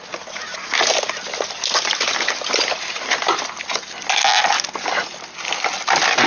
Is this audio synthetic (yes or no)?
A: no